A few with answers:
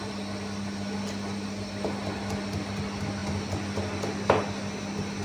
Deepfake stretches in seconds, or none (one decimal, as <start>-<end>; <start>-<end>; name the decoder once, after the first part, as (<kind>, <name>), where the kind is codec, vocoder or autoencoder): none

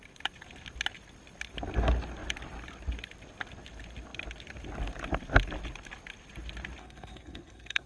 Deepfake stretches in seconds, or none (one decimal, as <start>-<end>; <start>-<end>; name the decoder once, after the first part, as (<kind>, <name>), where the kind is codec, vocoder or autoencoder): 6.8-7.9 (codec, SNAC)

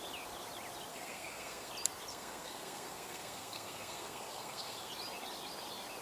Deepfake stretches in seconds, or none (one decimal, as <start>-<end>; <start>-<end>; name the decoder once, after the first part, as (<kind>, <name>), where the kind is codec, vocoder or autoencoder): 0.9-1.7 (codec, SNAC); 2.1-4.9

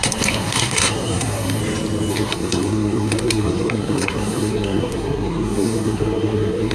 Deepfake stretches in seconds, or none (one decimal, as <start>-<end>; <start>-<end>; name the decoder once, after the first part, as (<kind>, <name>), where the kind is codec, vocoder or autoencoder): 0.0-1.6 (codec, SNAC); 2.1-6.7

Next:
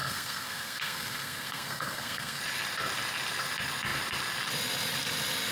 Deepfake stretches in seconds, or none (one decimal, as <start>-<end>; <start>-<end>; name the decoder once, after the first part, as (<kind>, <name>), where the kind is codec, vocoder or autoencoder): 0.0-2.4 (codec, SNAC)